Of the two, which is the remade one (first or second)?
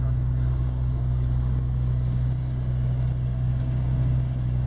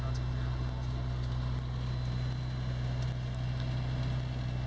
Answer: first